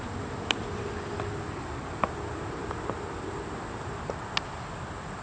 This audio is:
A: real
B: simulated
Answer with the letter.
A